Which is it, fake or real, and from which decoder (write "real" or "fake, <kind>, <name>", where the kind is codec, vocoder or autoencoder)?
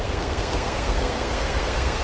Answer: fake, codec, SNAC